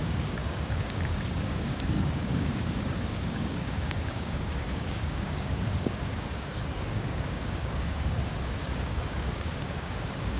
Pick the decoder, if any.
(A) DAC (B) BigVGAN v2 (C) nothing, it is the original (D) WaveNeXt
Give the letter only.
A